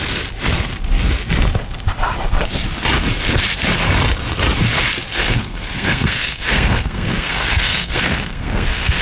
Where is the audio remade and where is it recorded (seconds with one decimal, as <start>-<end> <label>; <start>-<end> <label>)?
0.0-5.1 recorded; 5.1-9.0 remade